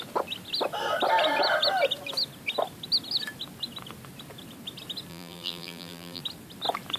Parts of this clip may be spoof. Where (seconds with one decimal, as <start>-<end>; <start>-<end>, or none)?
5.1-6.2